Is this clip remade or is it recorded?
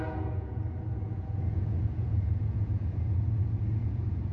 remade